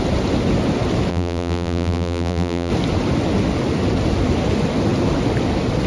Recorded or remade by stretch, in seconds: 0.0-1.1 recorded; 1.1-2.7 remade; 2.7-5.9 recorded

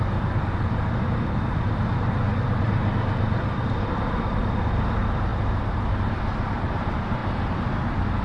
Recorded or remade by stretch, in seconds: 0.0-7.2 remade; 7.2-8.2 recorded

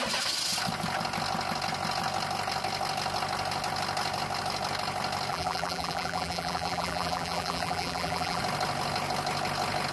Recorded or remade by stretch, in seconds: 0.0-5.3 recorded; 5.3-8.4 remade; 8.4-9.9 recorded

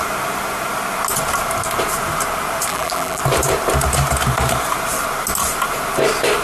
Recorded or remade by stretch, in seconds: 0.0-2.7 recorded; 2.7-3.2 remade; 3.2-6.4 recorded

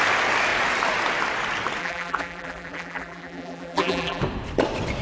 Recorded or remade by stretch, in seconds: 0.0-1.8 recorded; 1.8-4.2 remade; 4.2-5.0 recorded

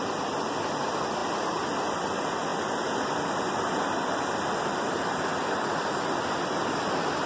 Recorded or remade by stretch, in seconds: 0.0-5.3 remade; 5.3-6.2 recorded; 6.2-7.3 remade

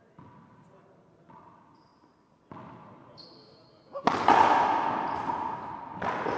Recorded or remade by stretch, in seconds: 0.0-6.4 recorded

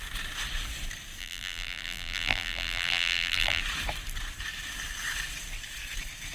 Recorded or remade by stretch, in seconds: 0.0-1.2 recorded; 1.2-3.6 remade; 3.6-6.3 recorded